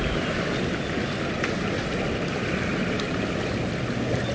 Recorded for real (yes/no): yes